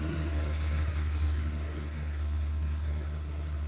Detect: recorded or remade remade